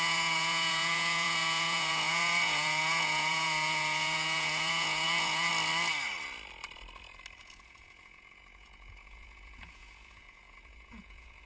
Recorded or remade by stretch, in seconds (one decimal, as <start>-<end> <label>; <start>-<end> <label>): 0.0-5.5 remade; 5.5-7.4 recorded; 7.4-11.5 remade